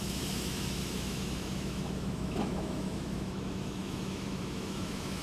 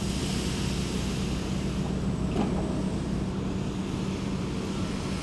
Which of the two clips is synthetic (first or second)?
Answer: first